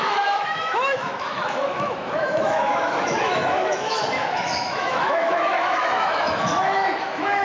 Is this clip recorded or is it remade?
remade